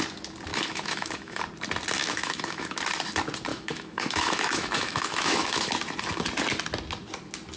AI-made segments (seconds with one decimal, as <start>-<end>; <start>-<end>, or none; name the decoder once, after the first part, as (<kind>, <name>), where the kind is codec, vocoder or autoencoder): 0.5-1.4 (autoencoder, DAC-VAE); 2.0-2.8; 3.5-5.7